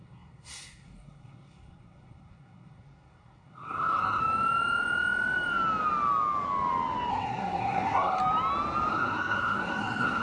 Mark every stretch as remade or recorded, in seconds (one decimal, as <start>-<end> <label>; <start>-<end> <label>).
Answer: 0.0-4.2 remade; 4.2-7.1 recorded; 7.1-8.2 remade; 8.2-8.9 recorded; 8.9-10.2 remade